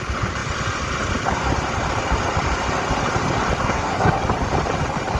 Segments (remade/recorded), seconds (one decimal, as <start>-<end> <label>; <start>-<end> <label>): 0.0-3.6 recorded; 3.6-4.2 remade; 4.2-5.2 recorded